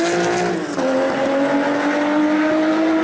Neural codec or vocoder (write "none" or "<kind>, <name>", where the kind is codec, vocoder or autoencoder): none